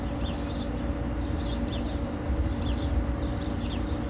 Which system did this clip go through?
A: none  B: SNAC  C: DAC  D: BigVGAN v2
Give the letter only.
A